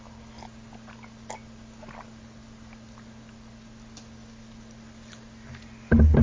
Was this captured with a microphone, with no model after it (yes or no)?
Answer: yes